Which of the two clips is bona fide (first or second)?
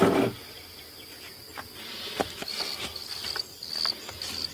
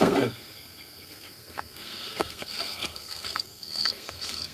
first